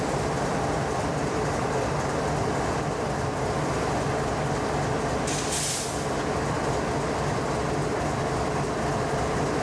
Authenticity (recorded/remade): recorded